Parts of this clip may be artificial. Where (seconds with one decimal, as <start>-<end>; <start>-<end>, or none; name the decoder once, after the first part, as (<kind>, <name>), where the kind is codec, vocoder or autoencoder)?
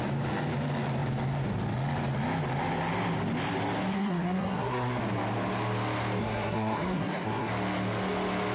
3.9-5.0 (codec, SNAC); 6.2-7.5